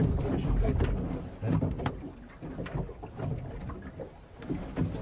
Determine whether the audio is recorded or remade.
recorded